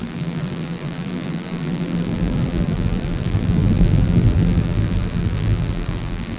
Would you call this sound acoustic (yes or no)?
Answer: no